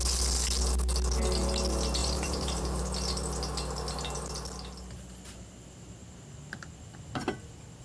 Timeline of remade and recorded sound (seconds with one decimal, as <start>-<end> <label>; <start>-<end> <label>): 0.0-2.0 recorded; 2.0-2.8 remade; 2.8-7.8 recorded

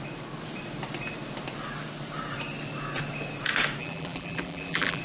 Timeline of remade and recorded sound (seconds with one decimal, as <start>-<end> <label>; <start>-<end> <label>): 0.0-3.8 recorded; 3.8-5.0 remade

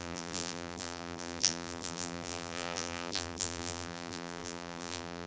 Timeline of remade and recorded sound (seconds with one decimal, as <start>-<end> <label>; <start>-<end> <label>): 0.0-5.3 remade

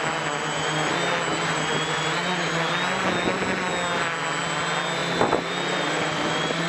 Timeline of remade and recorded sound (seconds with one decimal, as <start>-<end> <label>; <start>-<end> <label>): 0.0-5.0 recorded; 5.0-6.7 remade

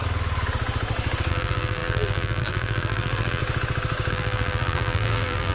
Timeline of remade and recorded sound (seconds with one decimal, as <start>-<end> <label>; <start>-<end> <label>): 0.0-1.3 recorded; 1.3-3.4 remade; 3.4-4.1 recorded; 4.1-5.5 remade

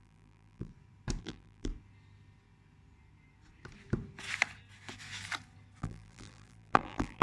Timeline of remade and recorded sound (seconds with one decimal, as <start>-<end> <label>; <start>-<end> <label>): 0.0-0.7 remade; 0.7-1.2 recorded; 1.2-1.7 remade; 1.7-5.8 recorded; 5.8-7.2 remade